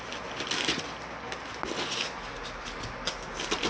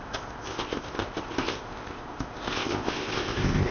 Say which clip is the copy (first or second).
second